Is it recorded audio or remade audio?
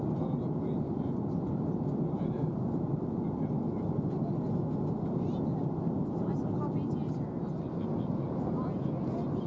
recorded